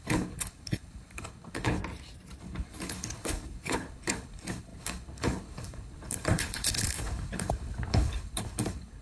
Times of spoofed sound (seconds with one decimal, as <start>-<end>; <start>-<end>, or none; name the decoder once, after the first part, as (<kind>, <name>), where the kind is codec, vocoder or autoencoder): 0.0-1.8 (codec, HILCodec); 2.4-9.0